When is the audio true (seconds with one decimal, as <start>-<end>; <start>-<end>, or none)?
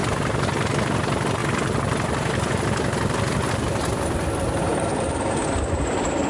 0.0-1.4; 3.5-4.7